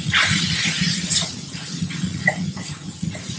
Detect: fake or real fake